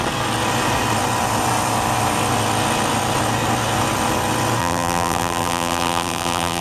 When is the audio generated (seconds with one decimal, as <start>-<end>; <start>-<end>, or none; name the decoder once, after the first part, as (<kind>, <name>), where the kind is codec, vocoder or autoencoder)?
4.6-6.6 (vocoder, BigVGAN v2)